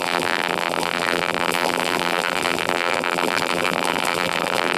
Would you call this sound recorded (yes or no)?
no